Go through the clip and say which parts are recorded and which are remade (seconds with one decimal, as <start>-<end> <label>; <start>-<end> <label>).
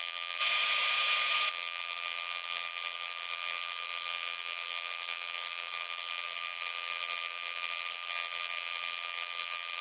0.0-0.4 remade; 0.4-1.5 recorded; 1.5-9.8 remade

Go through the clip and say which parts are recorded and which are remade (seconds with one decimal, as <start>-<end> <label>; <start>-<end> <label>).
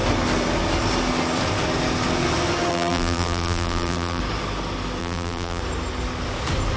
0.0-2.7 recorded; 2.7-4.2 remade; 4.2-5.0 recorded; 5.0-5.6 remade; 5.6-6.8 recorded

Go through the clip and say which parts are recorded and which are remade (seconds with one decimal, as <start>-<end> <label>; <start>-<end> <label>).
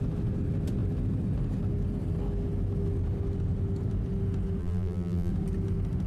0.0-4.6 recorded; 4.6-5.3 remade; 5.3-6.1 recorded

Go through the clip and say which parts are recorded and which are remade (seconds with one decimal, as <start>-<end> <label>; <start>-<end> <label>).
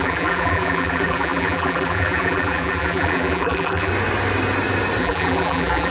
0.0-3.9 remade; 3.9-5.0 recorded; 5.0-5.9 remade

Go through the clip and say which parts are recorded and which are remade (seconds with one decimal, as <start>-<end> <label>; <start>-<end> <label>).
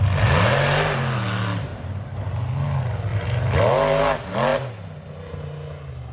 0.0-1.7 recorded; 1.7-2.3 remade; 2.3-3.1 recorded; 3.1-3.6 remade; 3.6-6.1 recorded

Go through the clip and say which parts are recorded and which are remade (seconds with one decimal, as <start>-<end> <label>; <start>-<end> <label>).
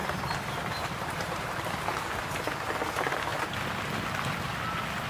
0.0-1.5 remade; 1.5-5.1 recorded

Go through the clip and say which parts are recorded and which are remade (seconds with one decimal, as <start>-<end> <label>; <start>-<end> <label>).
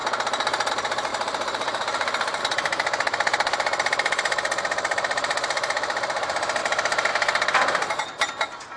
0.0-1.1 recorded; 1.1-2.4 remade; 2.4-6.6 recorded; 6.6-7.1 remade; 7.1-8.8 recorded